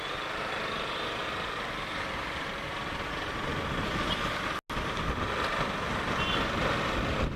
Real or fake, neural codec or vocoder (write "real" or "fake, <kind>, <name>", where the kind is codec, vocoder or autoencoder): real